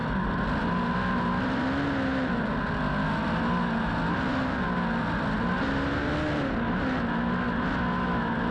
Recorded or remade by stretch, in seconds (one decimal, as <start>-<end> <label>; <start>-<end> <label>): 0.0-8.5 recorded